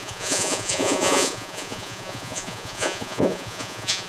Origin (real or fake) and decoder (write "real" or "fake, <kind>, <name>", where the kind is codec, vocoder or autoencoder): fake, vocoder, Vocos